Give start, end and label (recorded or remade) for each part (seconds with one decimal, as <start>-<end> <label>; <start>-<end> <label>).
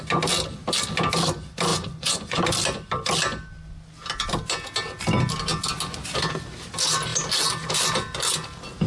0.0-1.7 recorded; 1.7-2.4 remade; 2.4-8.9 recorded